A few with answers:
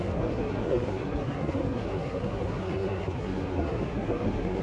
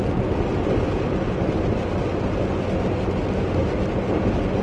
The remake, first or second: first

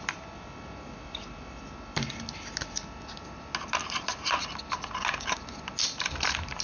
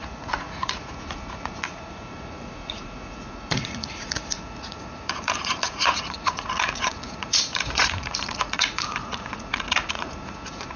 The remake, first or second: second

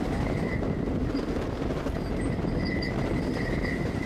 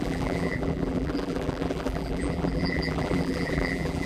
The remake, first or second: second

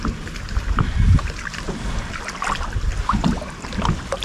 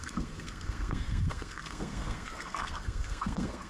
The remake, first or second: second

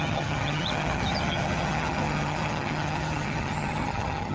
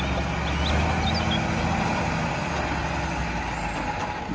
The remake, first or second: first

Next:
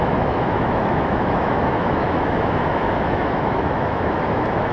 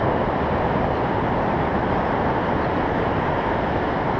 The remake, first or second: first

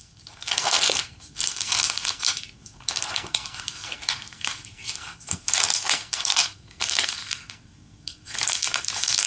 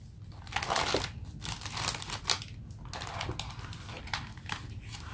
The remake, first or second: first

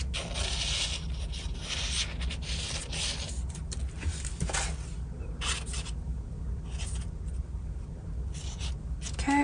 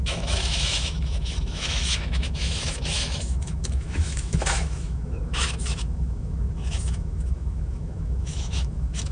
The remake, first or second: second